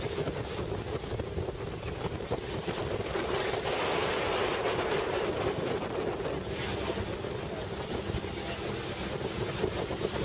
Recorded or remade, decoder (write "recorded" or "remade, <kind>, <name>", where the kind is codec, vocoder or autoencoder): recorded